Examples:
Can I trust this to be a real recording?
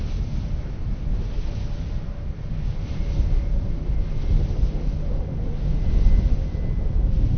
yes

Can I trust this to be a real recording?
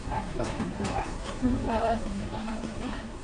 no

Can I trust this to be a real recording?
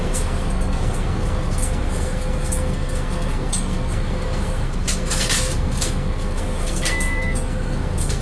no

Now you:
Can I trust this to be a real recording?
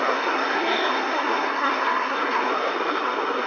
no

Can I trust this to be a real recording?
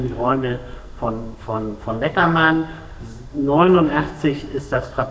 no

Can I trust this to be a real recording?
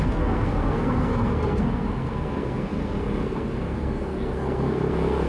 no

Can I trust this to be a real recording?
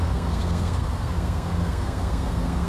no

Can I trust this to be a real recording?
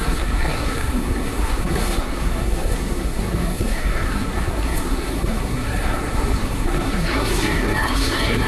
no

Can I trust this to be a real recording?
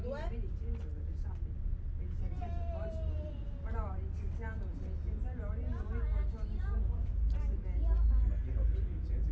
yes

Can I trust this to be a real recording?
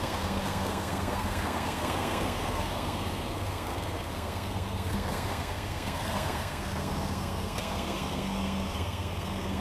no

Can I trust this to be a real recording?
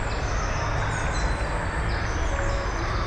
yes